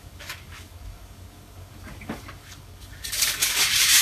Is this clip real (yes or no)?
no